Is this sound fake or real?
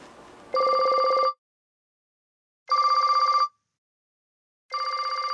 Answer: real